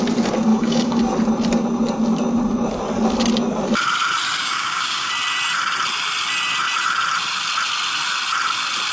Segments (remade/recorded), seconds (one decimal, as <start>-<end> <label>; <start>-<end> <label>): 0.0-0.5 recorded; 0.5-1.0 remade; 1.0-4.4 recorded; 4.4-5.1 remade; 5.1-8.9 recorded